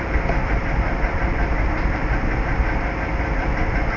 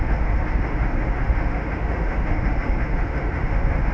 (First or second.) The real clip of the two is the first